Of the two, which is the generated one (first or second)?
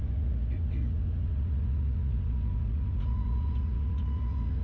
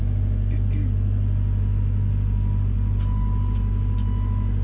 first